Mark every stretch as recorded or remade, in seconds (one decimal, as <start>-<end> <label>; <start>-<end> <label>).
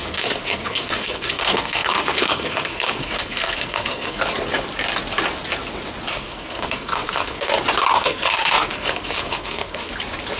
0.0-4.2 remade; 4.2-6.1 recorded; 6.1-7.5 remade; 7.5-7.9 recorded; 7.9-9.9 remade; 9.9-10.4 recorded